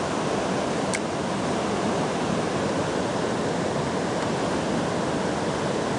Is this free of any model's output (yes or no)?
yes